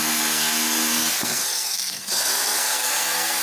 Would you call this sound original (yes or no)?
no